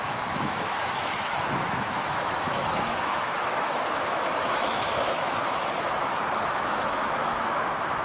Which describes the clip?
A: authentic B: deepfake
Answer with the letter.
B